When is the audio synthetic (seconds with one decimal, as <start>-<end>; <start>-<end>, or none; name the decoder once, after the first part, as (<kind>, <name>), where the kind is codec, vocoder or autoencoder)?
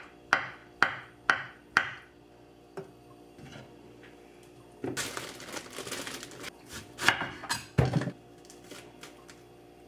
none